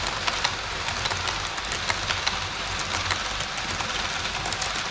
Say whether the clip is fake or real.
real